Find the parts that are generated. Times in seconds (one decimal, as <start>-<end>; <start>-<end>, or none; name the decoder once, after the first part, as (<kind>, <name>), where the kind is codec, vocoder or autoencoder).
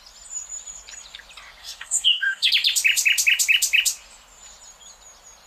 1.6-2.5 (codec, DAC)